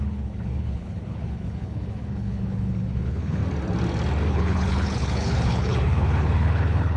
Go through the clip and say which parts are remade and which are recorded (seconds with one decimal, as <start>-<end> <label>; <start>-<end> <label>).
0.0-3.4 remade; 3.4-4.3 recorded; 4.3-7.0 remade